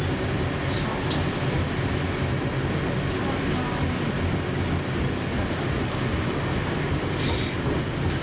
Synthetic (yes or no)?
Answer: no